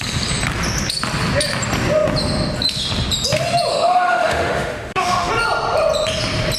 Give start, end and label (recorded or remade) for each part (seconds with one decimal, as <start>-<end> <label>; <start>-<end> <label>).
0.0-3.7 recorded; 3.7-5.3 remade; 5.3-6.6 recorded